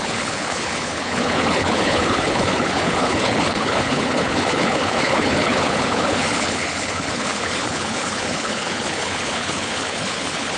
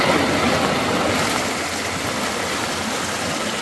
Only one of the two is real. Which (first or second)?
second